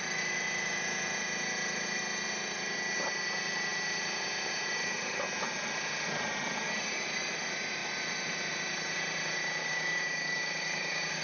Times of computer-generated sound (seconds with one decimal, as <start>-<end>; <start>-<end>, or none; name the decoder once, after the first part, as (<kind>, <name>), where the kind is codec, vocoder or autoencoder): 9.6-11.2 (codec, DAC)